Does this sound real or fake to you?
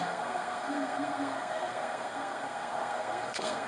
fake